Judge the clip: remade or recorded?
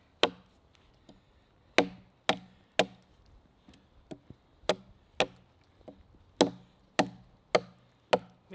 recorded